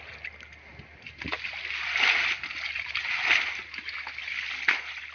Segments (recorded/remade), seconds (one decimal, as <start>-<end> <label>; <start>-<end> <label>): 0.0-5.1 recorded